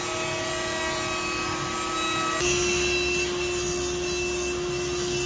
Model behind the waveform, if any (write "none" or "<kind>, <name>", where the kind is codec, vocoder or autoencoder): none